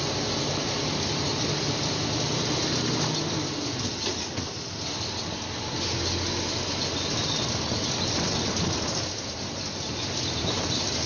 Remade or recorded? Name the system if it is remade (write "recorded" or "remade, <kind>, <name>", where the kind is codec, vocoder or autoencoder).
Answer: recorded